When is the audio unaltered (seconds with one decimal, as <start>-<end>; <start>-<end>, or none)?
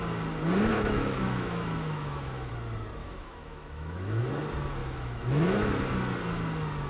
0.0-0.7; 2.5-3.0; 4.3-4.8; 5.8-6.9